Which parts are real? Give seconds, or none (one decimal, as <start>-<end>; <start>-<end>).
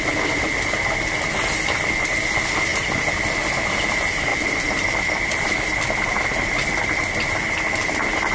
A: 0.0-4.3; 7.3-8.3